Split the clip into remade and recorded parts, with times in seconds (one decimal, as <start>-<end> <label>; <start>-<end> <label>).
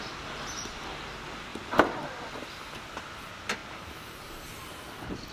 0.0-1.5 remade; 1.5-2.6 recorded; 2.6-5.3 remade